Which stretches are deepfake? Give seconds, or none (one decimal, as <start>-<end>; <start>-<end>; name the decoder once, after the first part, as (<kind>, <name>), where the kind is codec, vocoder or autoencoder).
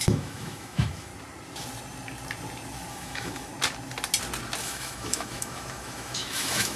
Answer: 0.0-1.1 (autoencoder, DAC-VAE); 2.9-3.5; 4.6-6.8